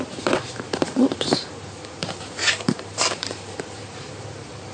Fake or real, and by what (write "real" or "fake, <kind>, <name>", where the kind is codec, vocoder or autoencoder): fake, vocoder, BigVGAN v2